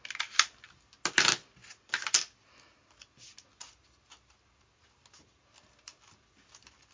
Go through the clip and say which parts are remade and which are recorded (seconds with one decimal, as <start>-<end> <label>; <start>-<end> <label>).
0.0-6.9 recorded